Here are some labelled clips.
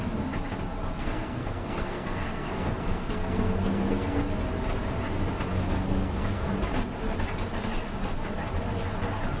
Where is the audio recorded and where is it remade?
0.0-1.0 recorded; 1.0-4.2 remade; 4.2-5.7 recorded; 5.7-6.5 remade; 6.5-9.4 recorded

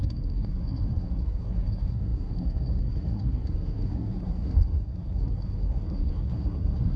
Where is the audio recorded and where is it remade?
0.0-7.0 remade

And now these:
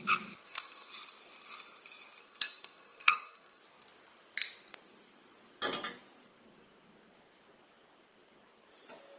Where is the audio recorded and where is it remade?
0.0-0.4 recorded; 0.4-0.9 remade; 0.9-2.2 recorded; 2.2-3.6 remade; 3.6-9.2 recorded

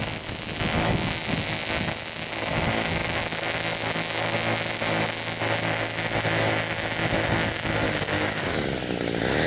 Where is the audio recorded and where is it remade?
0.0-9.5 recorded

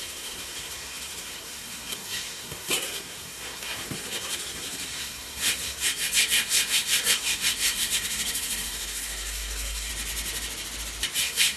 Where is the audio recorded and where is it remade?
0.0-9.9 remade; 9.9-11.2 recorded; 11.2-11.6 remade

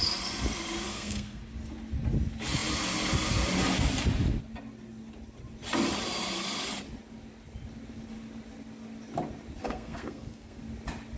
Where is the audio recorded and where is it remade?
0.0-0.9 recorded; 0.9-1.4 remade; 1.4-9.6 recorded; 9.6-10.6 remade; 10.6-11.2 recorded

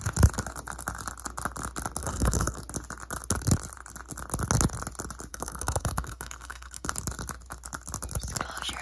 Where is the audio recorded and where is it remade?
0.0-2.0 recorded; 2.0-2.6 remade; 2.6-5.3 recorded; 5.3-6.9 remade; 6.9-8.8 recorded